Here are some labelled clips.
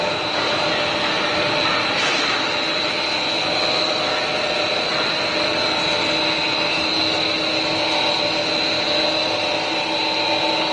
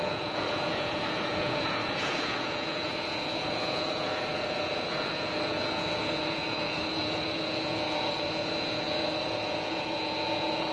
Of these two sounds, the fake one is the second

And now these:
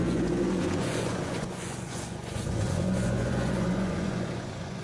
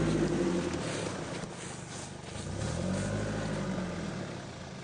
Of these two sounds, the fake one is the first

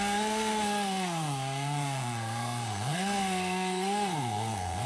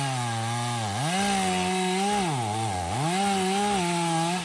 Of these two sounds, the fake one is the first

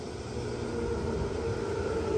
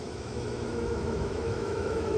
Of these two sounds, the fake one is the second